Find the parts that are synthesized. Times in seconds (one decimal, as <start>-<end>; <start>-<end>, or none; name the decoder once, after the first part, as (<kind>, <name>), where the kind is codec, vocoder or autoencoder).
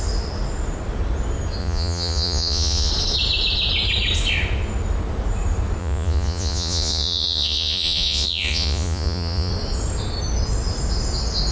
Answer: 1.6-2.9 (vocoder, Vocos); 5.8-9.5